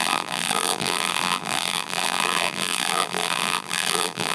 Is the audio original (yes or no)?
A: no